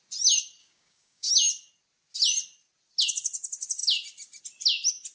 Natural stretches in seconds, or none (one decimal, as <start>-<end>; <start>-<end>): 0.0-0.6; 1.3-5.1